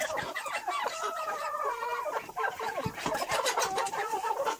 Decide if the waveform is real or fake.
fake